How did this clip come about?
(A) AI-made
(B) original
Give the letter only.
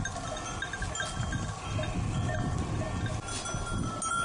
B